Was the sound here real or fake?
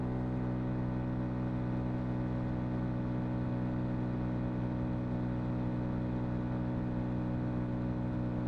real